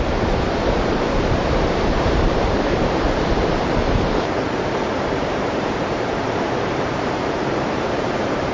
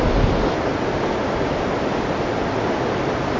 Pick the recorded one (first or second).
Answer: second